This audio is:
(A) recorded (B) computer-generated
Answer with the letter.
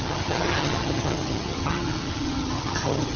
B